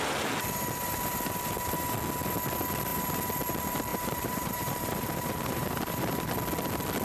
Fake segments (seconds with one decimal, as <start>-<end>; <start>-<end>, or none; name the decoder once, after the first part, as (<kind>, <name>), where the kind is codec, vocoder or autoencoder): 3.9-6.3 (vocoder, BigVGAN v2)